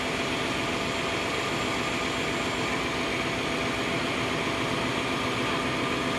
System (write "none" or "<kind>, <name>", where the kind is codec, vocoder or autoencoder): none